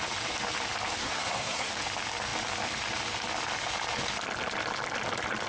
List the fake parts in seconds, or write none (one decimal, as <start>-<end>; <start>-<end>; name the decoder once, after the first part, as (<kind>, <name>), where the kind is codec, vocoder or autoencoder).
1.0-1.7 (codec, SNAC)